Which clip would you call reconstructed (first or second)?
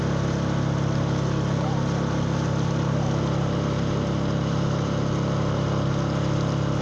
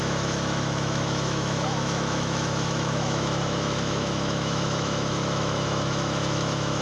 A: second